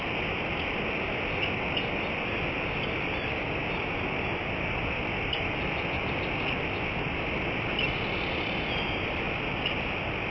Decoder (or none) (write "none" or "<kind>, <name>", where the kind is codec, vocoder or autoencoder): none